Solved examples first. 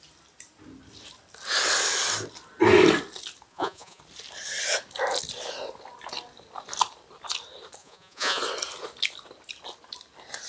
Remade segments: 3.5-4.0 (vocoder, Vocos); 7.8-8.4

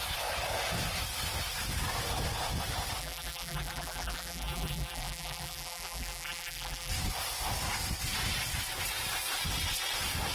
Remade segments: 3.0-6.9 (vocoder, BigVGAN v2)

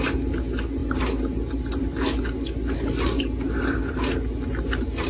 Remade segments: none

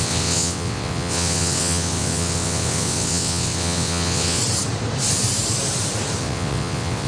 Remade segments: 0.0-4.4 (vocoder, WaveNeXt); 6.2-7.1

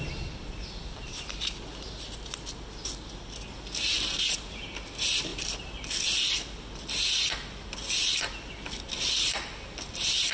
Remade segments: none

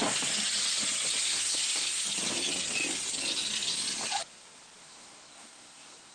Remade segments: 1.2-2.0 (codec, SNAC); 4.8-6.1

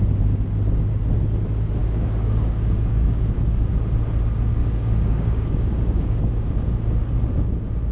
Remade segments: 1.8-3.7 (codec, DAC); 4.6-6.2

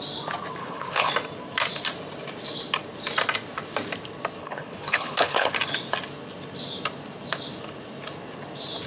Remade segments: 0.6-1.1 (codec, HILCodec); 4.4-5.5